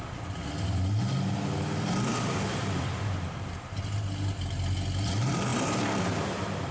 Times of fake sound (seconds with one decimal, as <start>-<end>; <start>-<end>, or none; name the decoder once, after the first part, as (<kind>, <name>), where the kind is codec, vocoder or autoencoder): none